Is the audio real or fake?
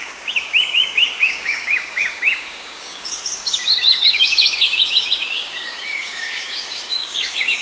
fake